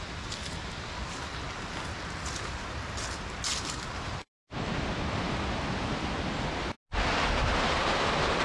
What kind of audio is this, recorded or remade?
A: recorded